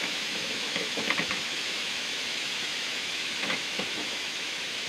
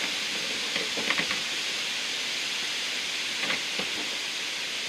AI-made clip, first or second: first